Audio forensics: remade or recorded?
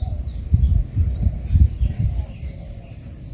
remade